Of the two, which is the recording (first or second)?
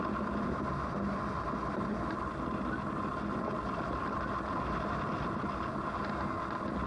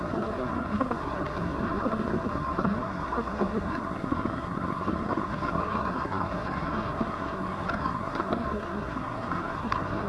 first